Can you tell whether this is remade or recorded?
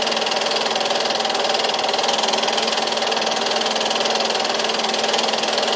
recorded